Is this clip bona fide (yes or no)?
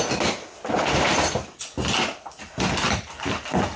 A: yes